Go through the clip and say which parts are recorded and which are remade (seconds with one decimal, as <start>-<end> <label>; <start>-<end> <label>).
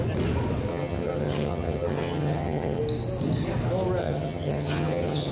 0.0-0.7 recorded; 0.7-2.8 remade; 2.8-4.0 recorded; 4.0-5.3 remade